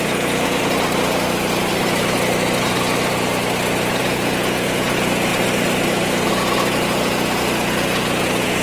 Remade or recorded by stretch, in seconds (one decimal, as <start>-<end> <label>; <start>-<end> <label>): 0.0-0.6 remade; 0.6-4.0 recorded; 4.0-5.3 remade; 5.3-6.3 recorded; 6.3-8.6 remade